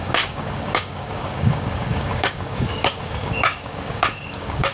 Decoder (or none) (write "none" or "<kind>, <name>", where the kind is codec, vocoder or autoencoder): codec, DAC